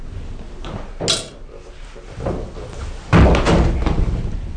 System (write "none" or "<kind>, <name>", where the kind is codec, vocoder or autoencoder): none